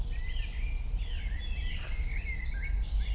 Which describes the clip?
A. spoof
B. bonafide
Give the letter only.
B